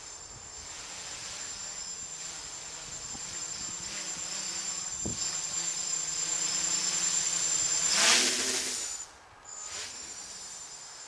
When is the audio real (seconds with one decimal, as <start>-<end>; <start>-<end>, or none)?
0.0-11.1